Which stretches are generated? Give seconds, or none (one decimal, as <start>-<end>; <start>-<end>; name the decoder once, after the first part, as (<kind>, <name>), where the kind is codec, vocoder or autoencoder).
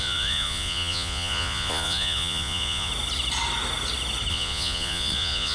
0.0-2.9 (vocoder, Vocos); 4.3-5.5